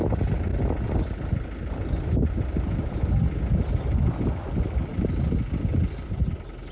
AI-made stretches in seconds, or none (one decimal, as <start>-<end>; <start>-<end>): none